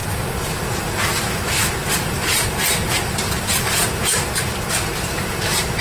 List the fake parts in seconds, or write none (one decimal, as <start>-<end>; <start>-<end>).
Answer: 1.9-4.1